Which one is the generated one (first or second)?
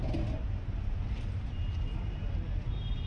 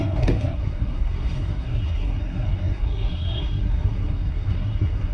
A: second